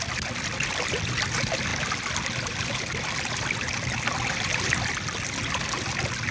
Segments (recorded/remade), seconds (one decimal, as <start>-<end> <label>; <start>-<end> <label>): 0.0-6.3 recorded